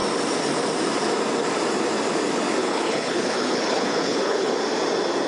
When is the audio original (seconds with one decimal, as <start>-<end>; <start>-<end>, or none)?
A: 0.0-2.6; 4.5-5.3